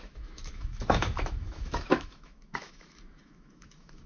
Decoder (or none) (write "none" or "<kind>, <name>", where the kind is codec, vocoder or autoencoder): autoencoder, DAC-VAE